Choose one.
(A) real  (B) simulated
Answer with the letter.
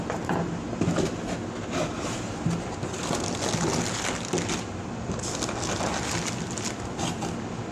A